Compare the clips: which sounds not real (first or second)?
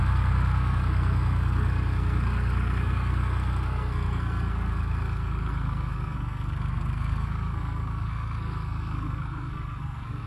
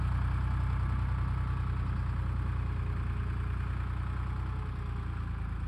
first